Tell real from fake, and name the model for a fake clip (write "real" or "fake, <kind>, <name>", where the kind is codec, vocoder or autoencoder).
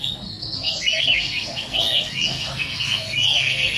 fake, codec, SNAC